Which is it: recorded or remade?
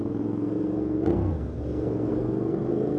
remade